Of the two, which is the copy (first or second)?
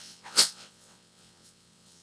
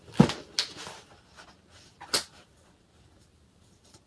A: first